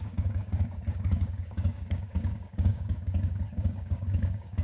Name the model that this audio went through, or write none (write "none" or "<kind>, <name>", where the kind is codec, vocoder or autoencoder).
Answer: codec, DAC